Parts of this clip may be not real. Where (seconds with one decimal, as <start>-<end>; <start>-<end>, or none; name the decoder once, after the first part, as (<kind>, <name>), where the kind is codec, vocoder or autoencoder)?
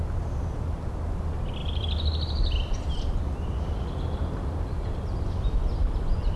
none